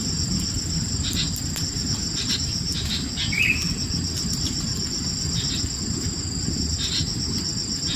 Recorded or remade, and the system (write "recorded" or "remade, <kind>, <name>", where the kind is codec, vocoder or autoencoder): recorded